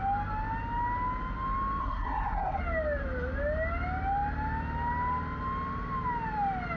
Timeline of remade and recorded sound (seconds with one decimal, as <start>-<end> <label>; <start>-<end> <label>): 0.0-1.8 recorded; 1.8-2.6 remade; 2.6-6.8 recorded